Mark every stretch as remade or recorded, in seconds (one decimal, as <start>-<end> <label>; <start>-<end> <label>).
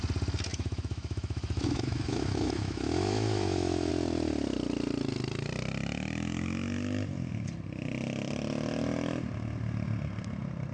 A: 0.0-0.5 recorded; 0.5-3.9 remade; 3.9-10.7 recorded